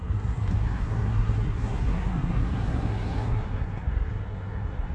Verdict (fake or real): fake